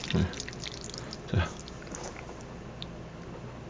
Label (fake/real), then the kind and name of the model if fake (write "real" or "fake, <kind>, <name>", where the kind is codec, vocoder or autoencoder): real